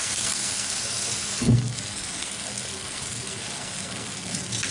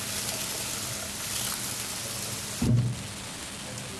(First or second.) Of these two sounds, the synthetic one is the first